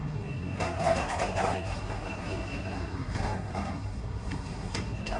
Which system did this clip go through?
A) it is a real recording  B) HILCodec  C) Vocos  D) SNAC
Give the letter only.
D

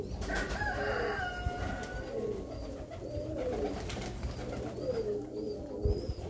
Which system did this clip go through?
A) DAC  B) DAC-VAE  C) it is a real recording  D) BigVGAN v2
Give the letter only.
C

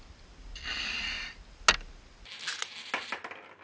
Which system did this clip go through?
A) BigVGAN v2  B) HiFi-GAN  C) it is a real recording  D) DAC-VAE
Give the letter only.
C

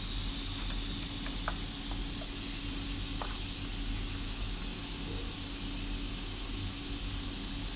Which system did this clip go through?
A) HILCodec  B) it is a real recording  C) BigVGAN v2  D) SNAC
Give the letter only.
B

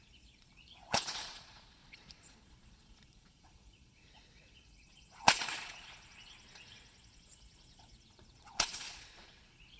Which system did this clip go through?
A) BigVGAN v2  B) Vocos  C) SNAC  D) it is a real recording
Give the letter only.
B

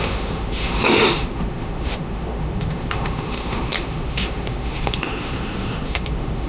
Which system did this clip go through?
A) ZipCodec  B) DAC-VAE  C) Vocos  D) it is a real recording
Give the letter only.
B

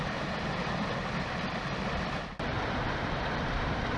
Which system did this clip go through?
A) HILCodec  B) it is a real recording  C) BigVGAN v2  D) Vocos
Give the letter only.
C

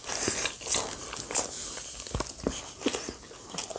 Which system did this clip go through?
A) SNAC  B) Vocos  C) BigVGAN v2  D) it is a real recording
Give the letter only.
D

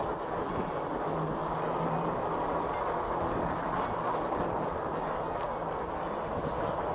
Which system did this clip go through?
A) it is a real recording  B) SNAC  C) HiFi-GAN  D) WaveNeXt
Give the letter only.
A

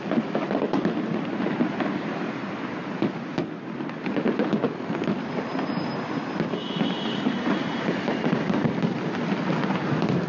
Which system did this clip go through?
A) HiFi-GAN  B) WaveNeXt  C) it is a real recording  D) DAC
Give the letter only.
C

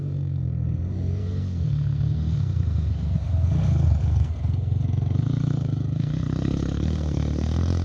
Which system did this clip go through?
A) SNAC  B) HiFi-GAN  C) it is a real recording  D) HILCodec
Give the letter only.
A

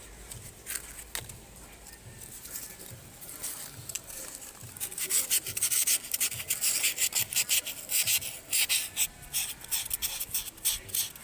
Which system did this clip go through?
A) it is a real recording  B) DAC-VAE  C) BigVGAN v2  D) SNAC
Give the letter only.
A